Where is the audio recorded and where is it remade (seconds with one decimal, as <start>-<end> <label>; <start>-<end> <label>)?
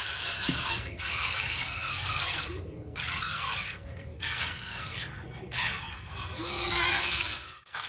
0.0-7.9 remade